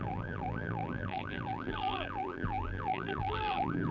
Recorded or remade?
remade